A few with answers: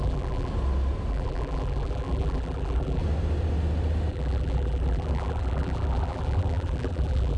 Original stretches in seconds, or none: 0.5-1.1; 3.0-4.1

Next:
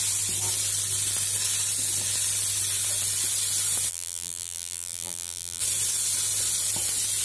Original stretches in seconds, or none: 0.0-3.9; 5.6-7.2

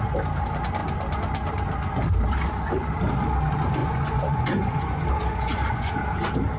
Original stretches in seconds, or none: 0.0-3.8; 5.9-6.6

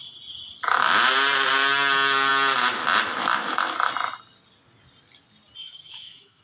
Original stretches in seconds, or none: 0.0-5.6

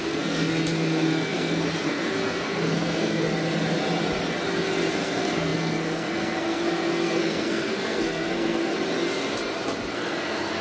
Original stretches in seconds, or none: 3.3-4.9; 8.7-9.9

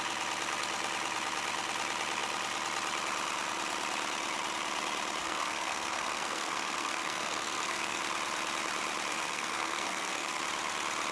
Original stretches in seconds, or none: 0.0-5.2; 8.0-9.1; 10.4-11.1

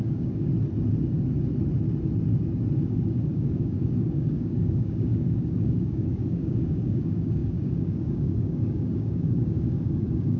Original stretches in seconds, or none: 0.5-2.8